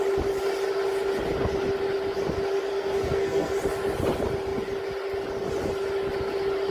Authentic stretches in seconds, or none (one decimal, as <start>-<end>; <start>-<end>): 0.0-2.7; 3.5-6.7